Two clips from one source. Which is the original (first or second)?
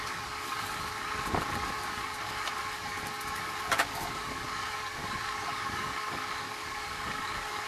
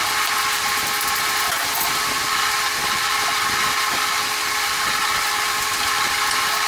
second